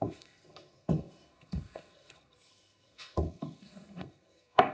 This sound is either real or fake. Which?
fake